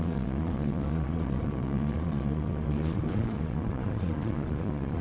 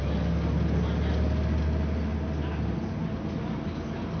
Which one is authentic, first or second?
second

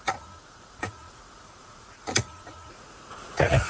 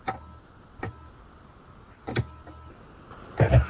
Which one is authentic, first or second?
second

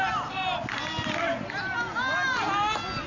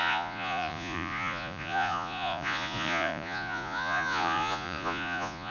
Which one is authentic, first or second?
first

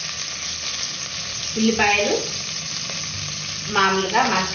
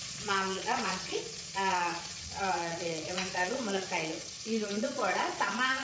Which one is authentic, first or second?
first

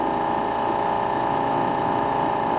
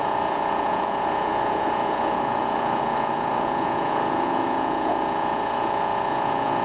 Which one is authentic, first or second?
first